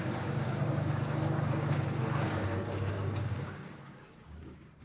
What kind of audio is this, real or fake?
fake